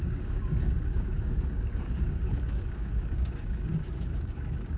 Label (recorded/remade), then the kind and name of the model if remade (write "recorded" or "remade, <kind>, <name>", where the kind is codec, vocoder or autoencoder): remade, codec, DAC